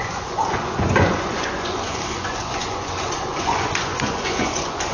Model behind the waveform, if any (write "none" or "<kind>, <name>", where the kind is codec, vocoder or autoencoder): vocoder, Vocos